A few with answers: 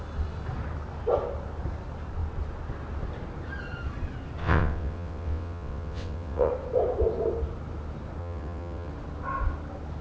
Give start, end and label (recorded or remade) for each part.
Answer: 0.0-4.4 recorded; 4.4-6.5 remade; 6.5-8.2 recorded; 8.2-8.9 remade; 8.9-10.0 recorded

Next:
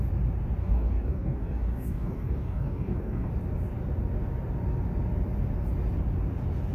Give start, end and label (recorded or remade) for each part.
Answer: 0.0-0.6 recorded; 0.6-3.3 remade; 3.3-6.7 recorded